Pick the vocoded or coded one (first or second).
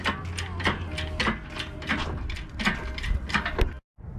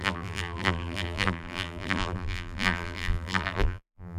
second